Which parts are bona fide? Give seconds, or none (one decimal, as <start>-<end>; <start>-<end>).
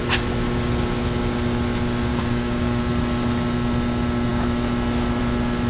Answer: 0.0-2.1; 2.8-5.7